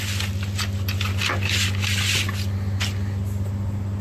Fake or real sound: real